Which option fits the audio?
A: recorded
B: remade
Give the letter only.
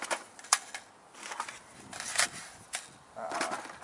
A